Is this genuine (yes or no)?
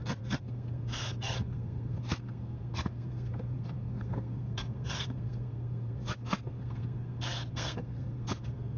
no